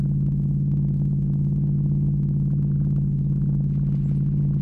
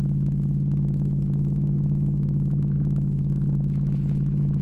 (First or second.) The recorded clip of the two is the first